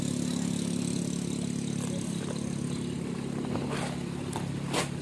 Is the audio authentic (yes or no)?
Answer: yes